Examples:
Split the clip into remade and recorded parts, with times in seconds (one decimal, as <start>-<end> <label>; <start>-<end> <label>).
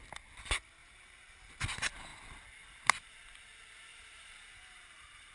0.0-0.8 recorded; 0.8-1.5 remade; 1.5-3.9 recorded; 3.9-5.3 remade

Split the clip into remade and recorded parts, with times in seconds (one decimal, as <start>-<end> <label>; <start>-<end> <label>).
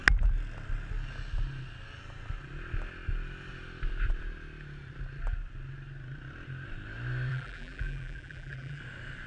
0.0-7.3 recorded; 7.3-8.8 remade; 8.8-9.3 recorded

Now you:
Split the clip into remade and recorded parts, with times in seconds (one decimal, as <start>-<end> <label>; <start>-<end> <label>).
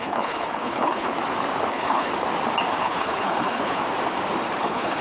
0.0-1.1 remade; 1.1-1.7 recorded; 1.7-2.1 remade; 2.1-2.8 recorded; 2.8-3.8 remade; 3.8-4.6 recorded; 4.6-5.0 remade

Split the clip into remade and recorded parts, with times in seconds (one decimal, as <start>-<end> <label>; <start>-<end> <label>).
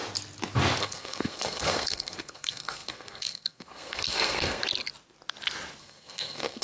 0.0-0.8 recorded; 0.8-4.6 remade; 4.6-5.8 recorded; 5.8-6.6 remade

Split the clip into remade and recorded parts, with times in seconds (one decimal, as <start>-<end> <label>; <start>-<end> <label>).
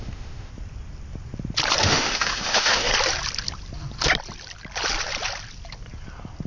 0.0-0.5 remade; 0.5-1.8 recorded; 1.8-2.9 remade; 2.9-6.5 recorded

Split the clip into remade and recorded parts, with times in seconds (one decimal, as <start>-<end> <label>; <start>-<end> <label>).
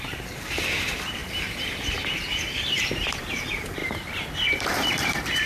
0.0-3.8 remade; 3.8-4.6 recorded; 4.6-5.5 remade